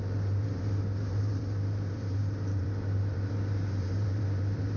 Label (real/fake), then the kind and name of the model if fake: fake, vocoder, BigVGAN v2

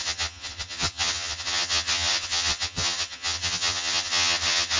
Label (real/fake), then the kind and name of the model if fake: fake, vocoder, HiFi-GAN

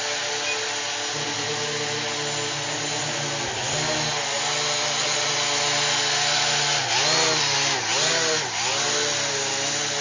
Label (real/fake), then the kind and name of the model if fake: real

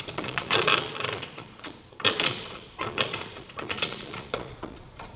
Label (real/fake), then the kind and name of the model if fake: fake, vocoder, Vocos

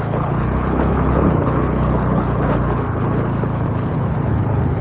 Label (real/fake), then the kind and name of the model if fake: fake, codec, HILCodec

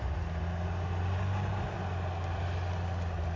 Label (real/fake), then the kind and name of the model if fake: real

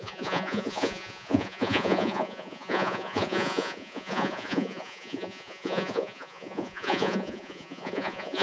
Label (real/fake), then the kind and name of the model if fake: fake, vocoder, Vocos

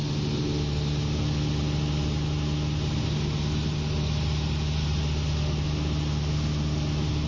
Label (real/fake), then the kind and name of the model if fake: real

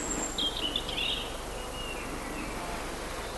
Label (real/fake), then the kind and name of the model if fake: real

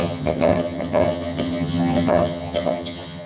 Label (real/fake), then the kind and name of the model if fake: fake, vocoder, HiFi-GAN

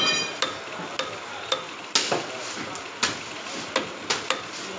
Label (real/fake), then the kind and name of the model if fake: real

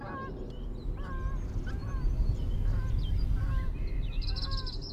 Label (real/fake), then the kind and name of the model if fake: real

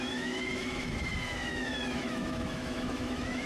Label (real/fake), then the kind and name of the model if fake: fake, autoencoder, DAC-VAE